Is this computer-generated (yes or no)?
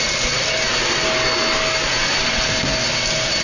no